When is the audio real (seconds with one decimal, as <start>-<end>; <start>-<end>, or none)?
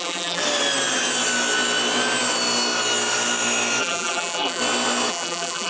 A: 0.4-3.8; 4.6-5.1